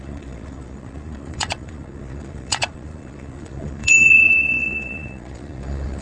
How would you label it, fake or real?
fake